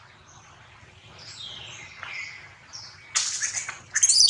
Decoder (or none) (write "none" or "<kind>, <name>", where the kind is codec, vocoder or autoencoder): none